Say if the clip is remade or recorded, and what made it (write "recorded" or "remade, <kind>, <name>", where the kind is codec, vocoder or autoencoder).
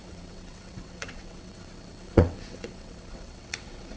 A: remade, vocoder, WaveNeXt